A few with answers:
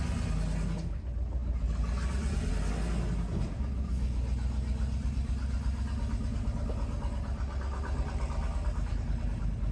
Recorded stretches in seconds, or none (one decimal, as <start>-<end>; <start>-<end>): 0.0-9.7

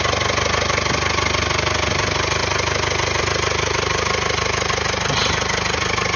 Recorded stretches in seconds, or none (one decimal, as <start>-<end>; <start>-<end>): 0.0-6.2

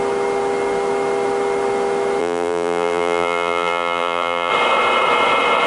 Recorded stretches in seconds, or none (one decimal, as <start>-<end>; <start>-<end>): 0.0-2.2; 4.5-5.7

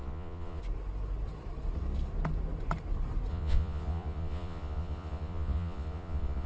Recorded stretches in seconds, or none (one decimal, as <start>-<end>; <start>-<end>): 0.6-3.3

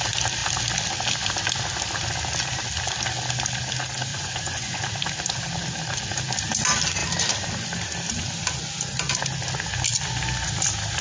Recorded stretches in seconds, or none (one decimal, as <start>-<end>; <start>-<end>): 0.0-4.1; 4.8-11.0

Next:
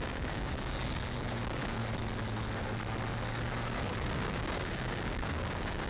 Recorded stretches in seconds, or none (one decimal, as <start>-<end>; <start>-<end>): 1.8-4.0